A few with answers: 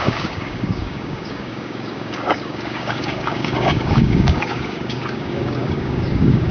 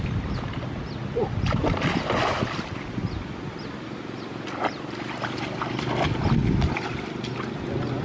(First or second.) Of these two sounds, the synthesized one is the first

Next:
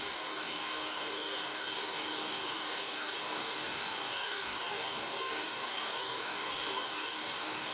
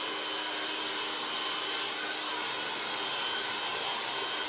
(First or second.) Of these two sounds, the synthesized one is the first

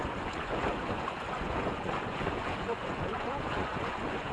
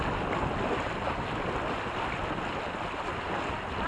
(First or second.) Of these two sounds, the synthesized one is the first